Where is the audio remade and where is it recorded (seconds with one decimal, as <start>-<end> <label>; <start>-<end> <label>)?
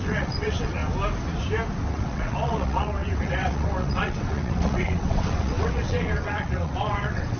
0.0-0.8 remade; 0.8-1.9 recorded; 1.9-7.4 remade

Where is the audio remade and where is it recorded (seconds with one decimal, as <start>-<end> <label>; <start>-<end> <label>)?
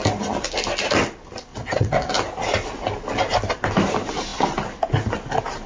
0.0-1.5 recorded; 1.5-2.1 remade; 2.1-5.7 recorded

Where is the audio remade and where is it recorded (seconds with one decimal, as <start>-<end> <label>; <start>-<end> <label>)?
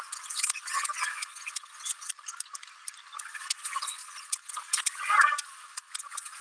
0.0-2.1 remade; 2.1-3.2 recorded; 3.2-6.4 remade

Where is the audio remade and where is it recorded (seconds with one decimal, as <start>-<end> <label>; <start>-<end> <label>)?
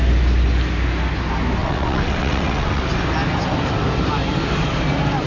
0.0-1.6 recorded; 1.6-2.8 remade; 2.8-5.3 recorded